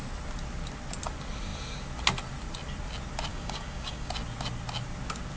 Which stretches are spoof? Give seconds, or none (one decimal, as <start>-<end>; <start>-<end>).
3.3-4.1